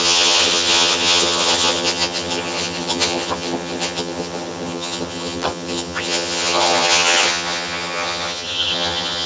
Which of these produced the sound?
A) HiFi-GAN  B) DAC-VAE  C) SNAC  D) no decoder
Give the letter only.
A